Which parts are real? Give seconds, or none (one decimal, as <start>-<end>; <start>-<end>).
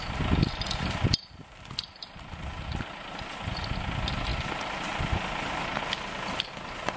0.0-7.0